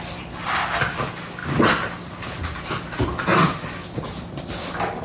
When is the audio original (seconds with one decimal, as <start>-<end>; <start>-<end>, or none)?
0.0-5.0